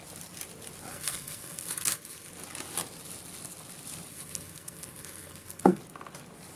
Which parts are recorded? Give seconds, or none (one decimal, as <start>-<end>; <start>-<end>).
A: 0.0-0.9; 2.3-4.1; 5.8-6.6

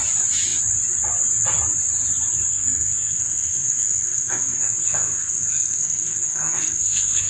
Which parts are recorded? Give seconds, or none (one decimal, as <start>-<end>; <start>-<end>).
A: 0.0-2.5

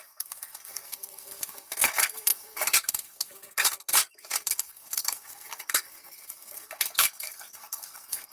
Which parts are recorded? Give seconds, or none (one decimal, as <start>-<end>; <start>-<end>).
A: none

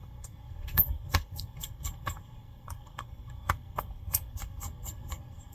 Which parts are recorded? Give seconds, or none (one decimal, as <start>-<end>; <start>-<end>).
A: none

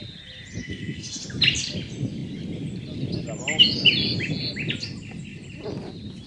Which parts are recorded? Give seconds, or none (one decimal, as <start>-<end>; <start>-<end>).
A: 0.0-0.6; 1.2-6.3

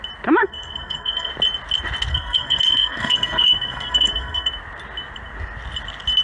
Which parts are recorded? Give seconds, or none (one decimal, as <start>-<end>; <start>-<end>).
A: 0.0-0.4; 1.3-2.1; 4.5-6.2